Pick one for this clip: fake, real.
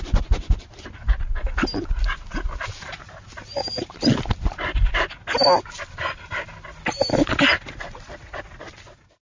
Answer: real